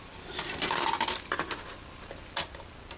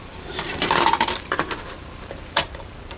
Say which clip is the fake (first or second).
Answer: second